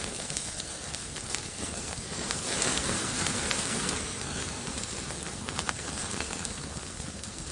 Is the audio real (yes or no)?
no